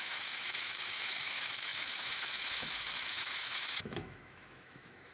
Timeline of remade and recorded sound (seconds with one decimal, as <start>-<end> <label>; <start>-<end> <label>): 0.0-5.1 remade